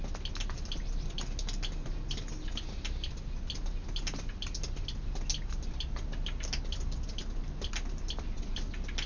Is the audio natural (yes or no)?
yes